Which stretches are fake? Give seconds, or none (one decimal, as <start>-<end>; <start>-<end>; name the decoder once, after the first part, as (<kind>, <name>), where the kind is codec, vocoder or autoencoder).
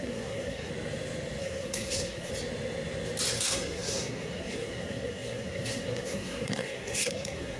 0.0-0.7 (codec, SNAC); 1.4-2.3; 3.4-7.6